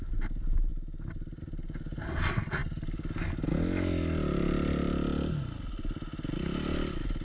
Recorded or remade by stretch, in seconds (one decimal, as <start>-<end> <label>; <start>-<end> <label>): 0.0-7.2 recorded